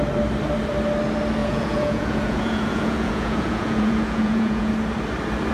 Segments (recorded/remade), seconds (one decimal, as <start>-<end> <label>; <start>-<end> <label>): 0.0-1.4 recorded; 1.4-4.7 remade; 4.7-5.5 recorded